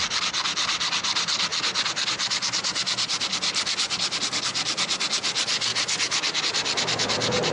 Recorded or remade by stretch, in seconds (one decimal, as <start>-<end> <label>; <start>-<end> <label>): 0.0-1.5 remade; 1.5-3.2 recorded; 3.2-5.7 remade; 5.7-6.4 recorded; 6.4-7.5 remade